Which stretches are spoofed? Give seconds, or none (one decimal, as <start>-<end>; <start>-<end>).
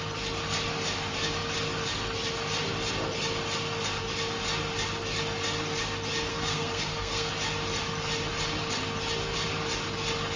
6.3-7.3